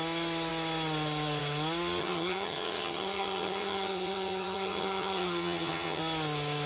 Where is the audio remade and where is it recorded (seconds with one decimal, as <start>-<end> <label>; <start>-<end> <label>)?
0.0-2.0 recorded; 2.0-6.0 remade; 6.0-6.7 recorded